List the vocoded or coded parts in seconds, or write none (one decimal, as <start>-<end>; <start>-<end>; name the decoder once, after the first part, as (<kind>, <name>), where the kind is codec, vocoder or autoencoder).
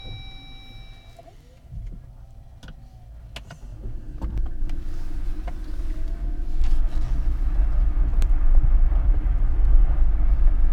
8.1-9.9 (vocoder, BigVGAN v2)